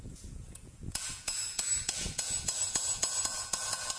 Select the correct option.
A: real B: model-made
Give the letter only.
B